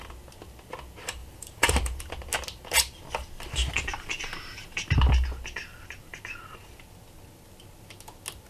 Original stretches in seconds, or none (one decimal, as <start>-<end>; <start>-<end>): 0.0-1.2; 2.1-3.9; 4.7-5.7; 6.2-8.5

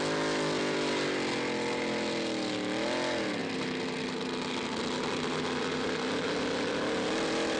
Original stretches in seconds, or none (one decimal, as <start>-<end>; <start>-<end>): 0.0-3.4; 4.0-7.6